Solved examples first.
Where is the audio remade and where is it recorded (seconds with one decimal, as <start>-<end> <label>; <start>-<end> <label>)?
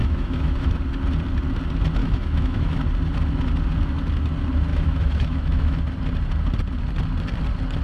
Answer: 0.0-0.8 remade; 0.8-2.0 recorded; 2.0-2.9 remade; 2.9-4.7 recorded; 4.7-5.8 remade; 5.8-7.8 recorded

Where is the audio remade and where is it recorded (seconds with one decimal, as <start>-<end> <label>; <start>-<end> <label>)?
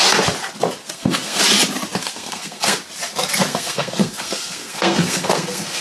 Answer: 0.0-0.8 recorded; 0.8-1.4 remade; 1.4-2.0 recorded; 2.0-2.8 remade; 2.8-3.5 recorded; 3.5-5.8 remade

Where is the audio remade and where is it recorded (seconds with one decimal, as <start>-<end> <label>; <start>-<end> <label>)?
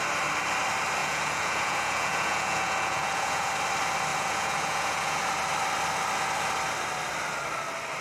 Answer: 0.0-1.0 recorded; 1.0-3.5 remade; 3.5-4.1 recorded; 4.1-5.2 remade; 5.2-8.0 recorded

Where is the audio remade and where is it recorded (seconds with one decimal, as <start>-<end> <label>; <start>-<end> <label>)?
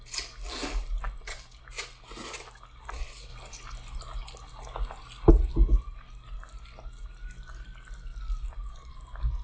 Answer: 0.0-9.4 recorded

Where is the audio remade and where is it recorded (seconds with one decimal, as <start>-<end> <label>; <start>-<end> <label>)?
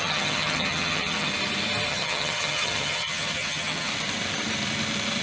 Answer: 0.0-1.3 remade; 1.3-1.9 recorded; 1.9-3.9 remade; 3.9-5.2 recorded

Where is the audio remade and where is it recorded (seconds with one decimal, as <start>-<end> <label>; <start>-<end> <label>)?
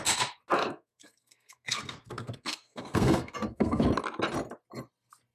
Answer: 0.0-0.6 recorded; 0.6-3.8 remade; 3.8-5.3 recorded